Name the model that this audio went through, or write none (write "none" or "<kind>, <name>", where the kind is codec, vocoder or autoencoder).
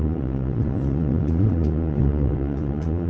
vocoder, Vocos